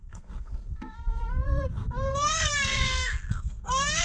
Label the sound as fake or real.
fake